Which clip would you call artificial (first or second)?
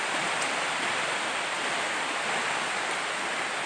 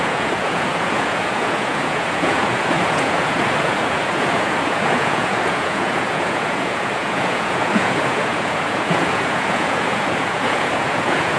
second